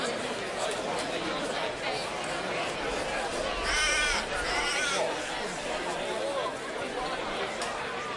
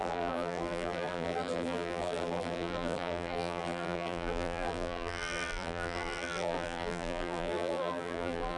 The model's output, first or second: second